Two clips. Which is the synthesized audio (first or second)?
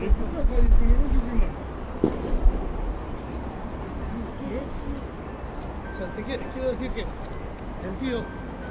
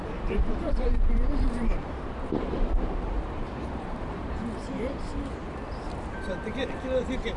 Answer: second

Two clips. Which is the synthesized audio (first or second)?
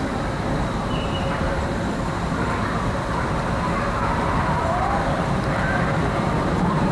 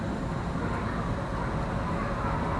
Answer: first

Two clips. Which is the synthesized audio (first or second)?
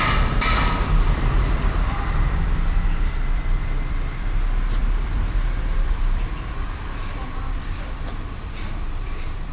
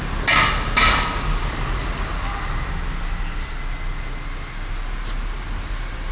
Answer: first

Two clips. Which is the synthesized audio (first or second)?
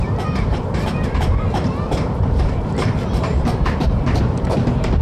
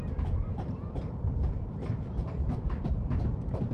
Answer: first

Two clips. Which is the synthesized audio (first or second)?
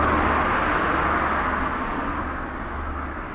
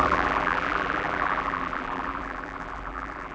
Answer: second